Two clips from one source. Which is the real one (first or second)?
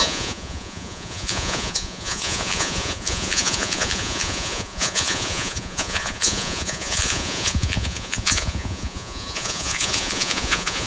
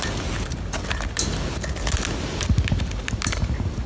second